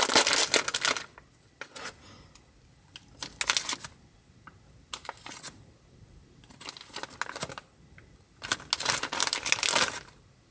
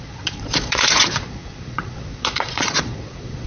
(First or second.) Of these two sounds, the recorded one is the first